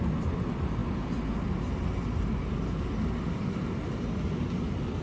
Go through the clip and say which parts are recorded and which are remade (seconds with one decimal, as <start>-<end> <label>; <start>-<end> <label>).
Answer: 0.0-5.0 recorded

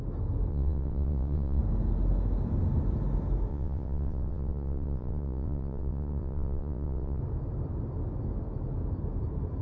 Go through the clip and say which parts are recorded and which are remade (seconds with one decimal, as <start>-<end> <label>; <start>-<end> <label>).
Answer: 0.0-0.5 recorded; 0.5-1.6 remade; 1.6-3.5 recorded; 3.5-7.2 remade; 7.2-9.6 recorded

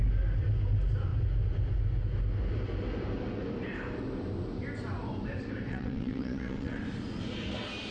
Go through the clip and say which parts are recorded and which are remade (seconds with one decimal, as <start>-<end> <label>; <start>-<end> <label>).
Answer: 0.0-5.7 recorded; 5.7-6.8 remade; 6.8-7.9 recorded